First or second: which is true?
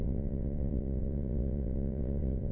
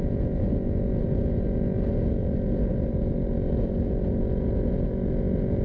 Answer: second